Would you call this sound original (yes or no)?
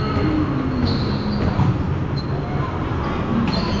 yes